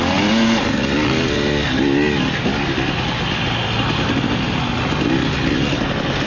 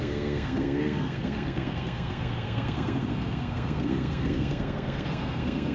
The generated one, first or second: second